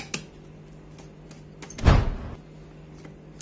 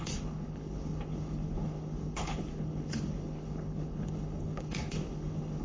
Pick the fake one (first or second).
second